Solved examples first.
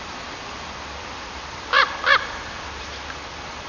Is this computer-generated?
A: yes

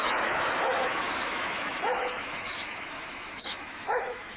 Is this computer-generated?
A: yes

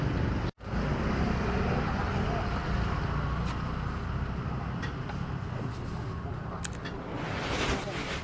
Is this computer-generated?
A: no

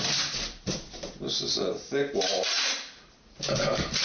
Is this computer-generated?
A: yes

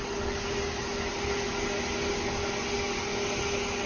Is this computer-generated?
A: no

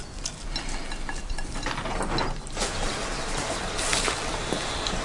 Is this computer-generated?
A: yes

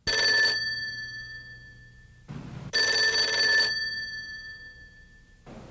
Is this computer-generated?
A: no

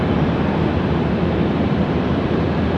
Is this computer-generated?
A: yes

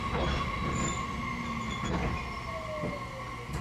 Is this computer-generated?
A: no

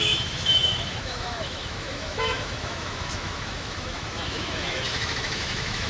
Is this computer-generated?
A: yes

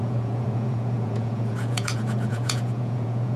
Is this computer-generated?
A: yes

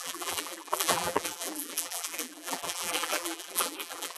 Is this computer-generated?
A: yes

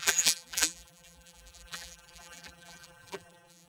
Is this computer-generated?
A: yes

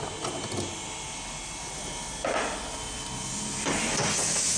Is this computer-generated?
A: no